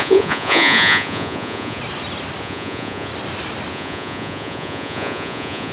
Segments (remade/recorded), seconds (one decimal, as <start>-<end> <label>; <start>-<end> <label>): 0.0-1.8 remade; 1.8-2.4 recorded; 2.4-3.1 remade; 3.1-3.7 recorded; 3.7-5.7 remade